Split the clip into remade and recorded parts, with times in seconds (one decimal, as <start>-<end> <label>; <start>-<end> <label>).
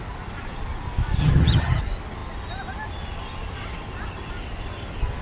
0.0-1.2 recorded; 1.2-1.8 remade; 1.8-5.2 recorded